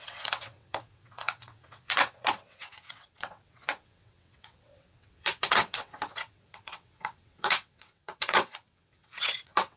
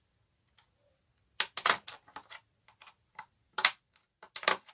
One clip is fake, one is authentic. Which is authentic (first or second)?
second